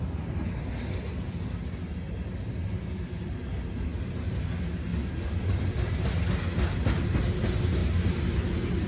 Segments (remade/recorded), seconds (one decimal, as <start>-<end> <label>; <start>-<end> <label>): 0.0-8.9 recorded